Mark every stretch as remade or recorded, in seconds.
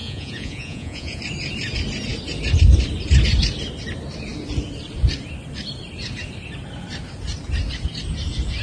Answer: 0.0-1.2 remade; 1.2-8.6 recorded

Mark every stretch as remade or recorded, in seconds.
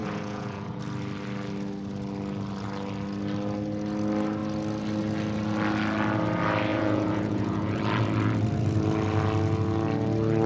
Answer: 0.0-0.8 remade; 0.8-6.7 recorded; 6.7-7.8 remade; 7.8-10.5 recorded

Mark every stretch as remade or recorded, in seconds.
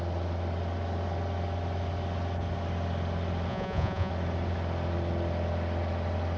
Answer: 0.0-3.5 recorded; 3.5-4.1 remade; 4.1-6.4 recorded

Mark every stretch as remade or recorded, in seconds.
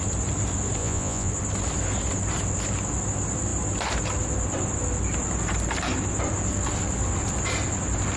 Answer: 0.0-0.8 recorded; 0.8-1.3 remade; 1.3-8.2 recorded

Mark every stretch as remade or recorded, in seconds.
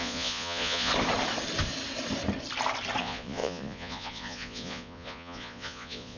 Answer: 0.0-0.9 remade; 0.9-3.0 recorded; 3.0-6.2 remade